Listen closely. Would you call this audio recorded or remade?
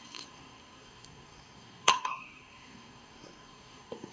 remade